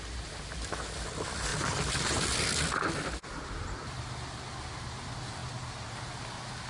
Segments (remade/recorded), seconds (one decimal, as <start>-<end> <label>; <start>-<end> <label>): 0.0-1.5 recorded; 1.5-3.5 remade; 3.5-5.4 recorded; 5.4-6.0 remade; 6.0-6.7 recorded